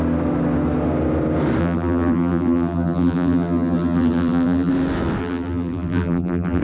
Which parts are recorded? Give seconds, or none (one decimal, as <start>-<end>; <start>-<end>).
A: 0.0-1.6; 4.7-5.2